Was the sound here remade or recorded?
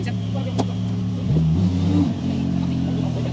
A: recorded